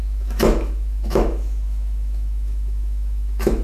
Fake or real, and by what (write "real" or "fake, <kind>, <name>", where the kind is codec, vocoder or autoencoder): fake, autoencoder, DAC-VAE